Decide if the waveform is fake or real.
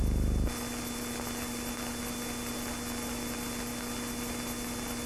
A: real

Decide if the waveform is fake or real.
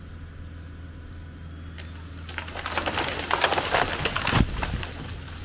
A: real